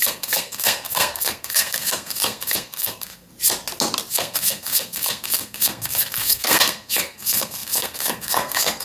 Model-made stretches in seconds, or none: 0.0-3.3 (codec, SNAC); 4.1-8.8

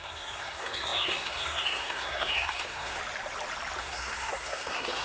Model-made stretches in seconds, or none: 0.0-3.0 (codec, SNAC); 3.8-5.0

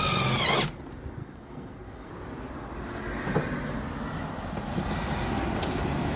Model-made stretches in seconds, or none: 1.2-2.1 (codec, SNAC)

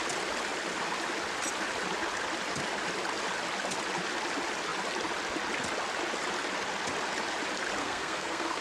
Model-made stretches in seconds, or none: 7.8-8.6 (codec, SNAC)

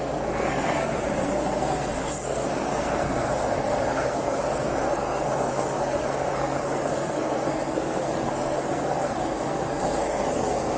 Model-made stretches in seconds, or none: 0.0-10.8 (codec, SNAC)

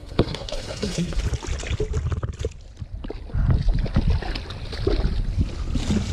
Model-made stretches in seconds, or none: 0.0-1.2 (codec, SNAC)

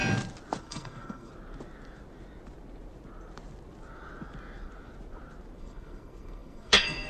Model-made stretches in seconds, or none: 0.6-1.3 (codec, SNAC); 5.6-7.1